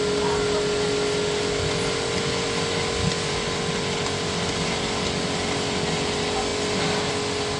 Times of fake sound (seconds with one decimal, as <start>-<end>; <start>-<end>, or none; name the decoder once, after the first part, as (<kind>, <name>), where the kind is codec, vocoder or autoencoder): none